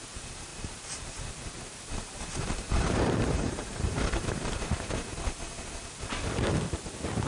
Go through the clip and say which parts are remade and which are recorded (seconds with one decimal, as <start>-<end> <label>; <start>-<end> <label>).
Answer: 0.0-0.5 recorded; 0.5-4.9 remade; 4.9-7.3 recorded